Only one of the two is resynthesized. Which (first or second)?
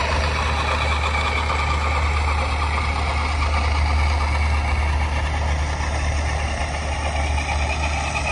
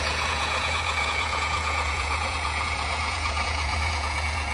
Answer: second